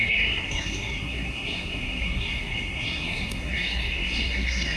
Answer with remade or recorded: remade